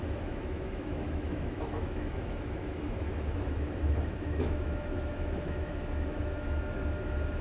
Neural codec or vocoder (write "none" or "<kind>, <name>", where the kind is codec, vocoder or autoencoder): autoencoder, DAC-VAE